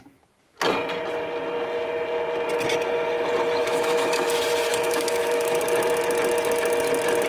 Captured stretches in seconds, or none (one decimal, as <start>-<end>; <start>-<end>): 0.0-3.6; 4.3-4.7; 5.6-7.3